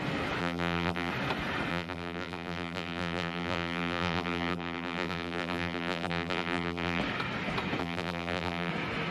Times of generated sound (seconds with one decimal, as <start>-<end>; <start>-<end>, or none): 0.4-1.1; 1.7-7.0; 7.8-8.7